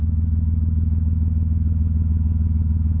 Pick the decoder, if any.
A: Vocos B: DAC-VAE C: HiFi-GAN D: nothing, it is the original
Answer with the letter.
B